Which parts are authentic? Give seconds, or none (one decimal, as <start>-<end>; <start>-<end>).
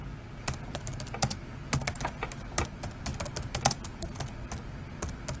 0.0-5.4